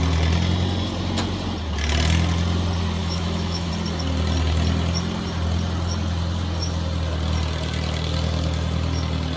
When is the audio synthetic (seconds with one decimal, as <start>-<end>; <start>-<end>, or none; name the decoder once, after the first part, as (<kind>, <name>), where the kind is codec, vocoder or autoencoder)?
3.0-3.7 (autoencoder, DAC-VAE)